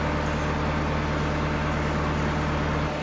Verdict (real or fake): real